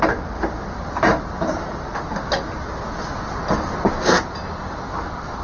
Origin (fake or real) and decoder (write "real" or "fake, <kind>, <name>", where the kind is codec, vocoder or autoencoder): real